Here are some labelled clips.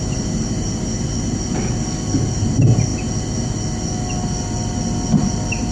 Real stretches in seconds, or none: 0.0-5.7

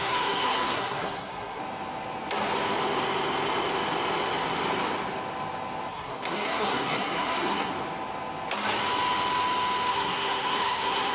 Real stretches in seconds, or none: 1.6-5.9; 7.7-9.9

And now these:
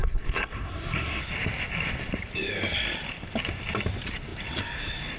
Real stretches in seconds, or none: 1.2-5.2

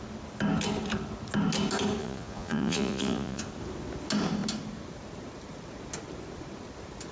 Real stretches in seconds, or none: 0.0-2.0; 3.4-7.1

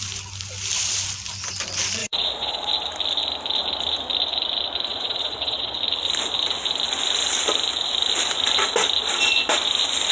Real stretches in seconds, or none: 0.0-2.0; 2.7-4.9; 5.8-10.1